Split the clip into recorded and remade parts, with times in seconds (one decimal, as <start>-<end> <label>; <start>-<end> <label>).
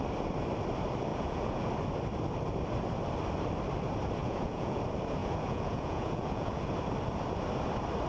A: 0.0-1.1 recorded; 1.1-1.7 remade; 1.7-4.2 recorded; 4.2-4.8 remade; 4.8-5.2 recorded; 5.2-6.7 remade; 6.7-8.1 recorded